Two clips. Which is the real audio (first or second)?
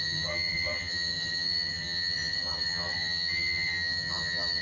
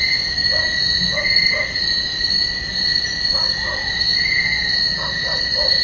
second